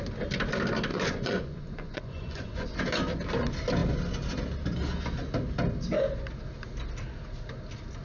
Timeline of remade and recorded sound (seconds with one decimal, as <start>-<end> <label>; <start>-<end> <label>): 0.0-0.9 recorded; 0.9-2.8 remade; 2.8-8.0 recorded

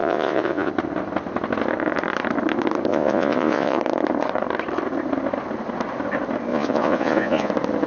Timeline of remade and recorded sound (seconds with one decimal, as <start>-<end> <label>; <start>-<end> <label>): 0.0-0.7 remade; 0.7-2.9 recorded; 2.9-3.8 remade; 3.8-6.5 recorded; 6.5-7.5 remade; 7.5-7.9 recorded

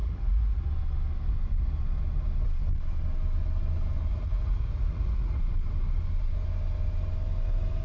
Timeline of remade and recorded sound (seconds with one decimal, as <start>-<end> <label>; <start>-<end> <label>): 0.0-0.7 remade; 0.7-4.1 recorded; 4.1-5.4 remade; 5.4-7.8 recorded

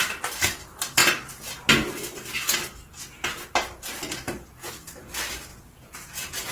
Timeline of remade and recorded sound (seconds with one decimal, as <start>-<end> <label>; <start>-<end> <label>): 0.0-5.5 recorded; 5.5-6.5 remade

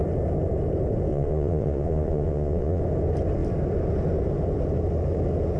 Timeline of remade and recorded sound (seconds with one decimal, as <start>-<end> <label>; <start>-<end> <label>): 0.0-1.1 recorded; 1.1-2.8 remade; 2.8-5.6 recorded

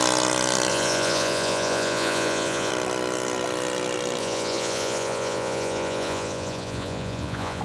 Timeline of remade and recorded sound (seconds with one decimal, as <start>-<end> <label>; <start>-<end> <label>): 0.0-0.7 recorded; 0.7-2.7 remade; 2.7-4.2 recorded; 4.2-7.6 remade

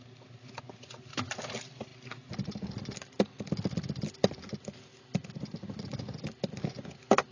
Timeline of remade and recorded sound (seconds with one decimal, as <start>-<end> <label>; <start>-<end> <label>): 0.0-7.3 recorded

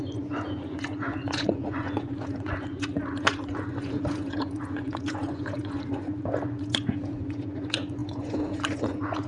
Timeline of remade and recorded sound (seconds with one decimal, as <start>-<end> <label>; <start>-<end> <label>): 0.0-9.3 remade